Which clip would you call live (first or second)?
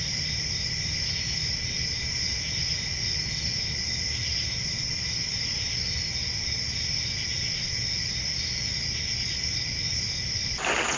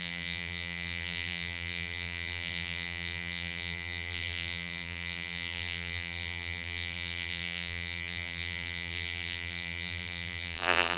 first